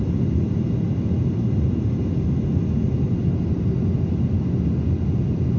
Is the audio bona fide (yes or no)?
yes